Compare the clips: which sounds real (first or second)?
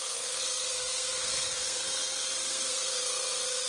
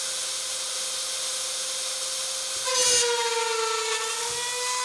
second